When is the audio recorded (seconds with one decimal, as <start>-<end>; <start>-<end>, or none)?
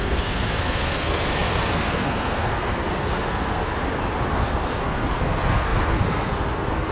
3.7-4.3